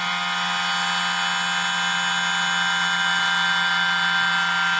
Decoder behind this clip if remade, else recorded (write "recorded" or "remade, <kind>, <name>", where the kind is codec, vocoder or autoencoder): recorded